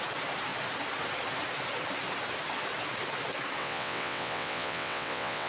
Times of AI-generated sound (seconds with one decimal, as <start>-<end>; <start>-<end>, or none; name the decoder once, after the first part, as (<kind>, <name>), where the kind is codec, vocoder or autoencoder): 3.6-5.5 (vocoder, WaveNeXt)